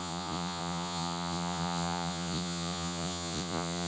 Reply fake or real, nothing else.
fake